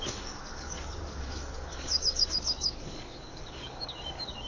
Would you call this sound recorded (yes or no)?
no